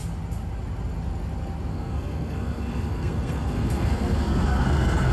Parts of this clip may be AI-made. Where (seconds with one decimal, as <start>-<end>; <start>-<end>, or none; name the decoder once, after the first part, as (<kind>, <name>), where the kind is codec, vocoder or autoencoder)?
1.7-5.1 (codec, SNAC)